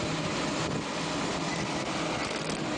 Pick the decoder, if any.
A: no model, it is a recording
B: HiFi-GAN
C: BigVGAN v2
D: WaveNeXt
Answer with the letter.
A